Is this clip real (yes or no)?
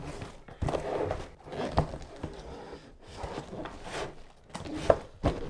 yes